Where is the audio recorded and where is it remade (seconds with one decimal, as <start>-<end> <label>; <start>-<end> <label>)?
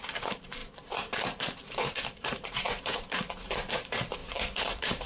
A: 0.0-5.1 remade